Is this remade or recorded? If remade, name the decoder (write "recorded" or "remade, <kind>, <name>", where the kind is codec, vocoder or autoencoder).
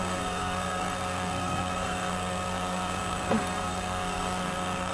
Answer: remade, codec, SNAC